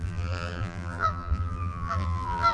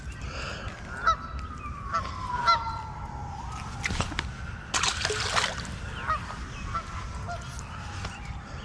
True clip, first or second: second